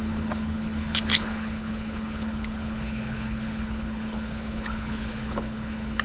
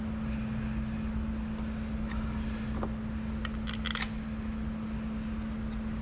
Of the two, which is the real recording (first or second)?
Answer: second